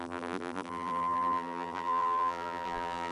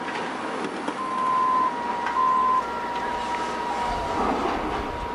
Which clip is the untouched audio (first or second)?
second